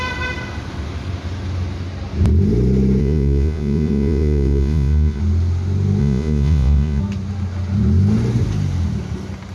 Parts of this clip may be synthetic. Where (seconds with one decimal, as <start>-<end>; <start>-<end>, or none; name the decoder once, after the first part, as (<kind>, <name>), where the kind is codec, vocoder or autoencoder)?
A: 3.0-5.2 (vocoder, Vocos); 6.0-7.0